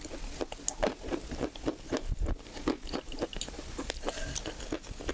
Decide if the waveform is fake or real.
real